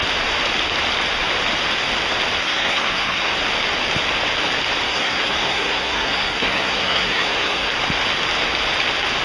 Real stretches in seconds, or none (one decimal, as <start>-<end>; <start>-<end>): 0.0-2.4; 3.3-4.9; 7.7-9.2